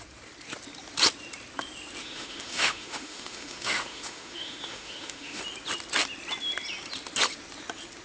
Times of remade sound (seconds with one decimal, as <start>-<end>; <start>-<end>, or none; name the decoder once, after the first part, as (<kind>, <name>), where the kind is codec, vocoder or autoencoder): 2.0-5.4 (autoencoder, DAC-VAE)